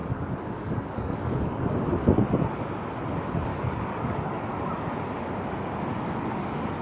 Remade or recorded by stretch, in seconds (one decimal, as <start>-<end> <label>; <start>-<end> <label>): 0.0-1.7 remade; 1.7-3.5 recorded; 3.5-4.8 remade; 4.8-5.9 recorded; 5.9-6.8 remade